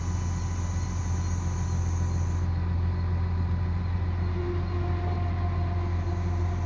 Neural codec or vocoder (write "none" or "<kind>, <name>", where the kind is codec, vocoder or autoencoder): none